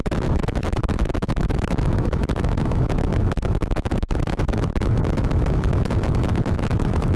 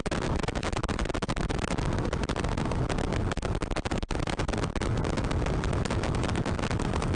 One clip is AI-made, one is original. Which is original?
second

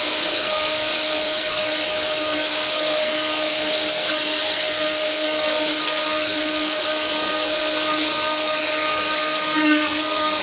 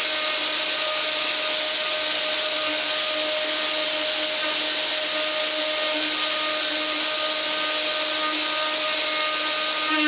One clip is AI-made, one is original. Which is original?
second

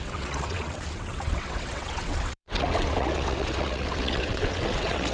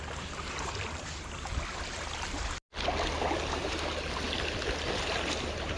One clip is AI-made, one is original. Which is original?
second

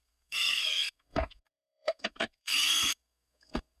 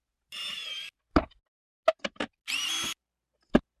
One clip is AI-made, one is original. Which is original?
second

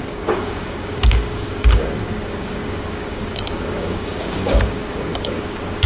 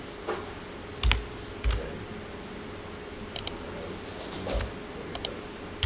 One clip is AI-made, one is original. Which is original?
second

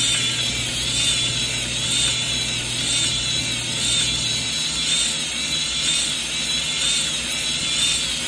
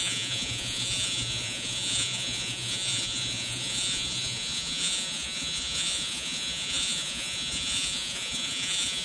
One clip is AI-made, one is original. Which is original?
first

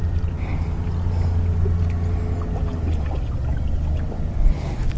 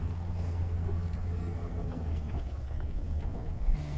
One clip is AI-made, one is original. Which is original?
first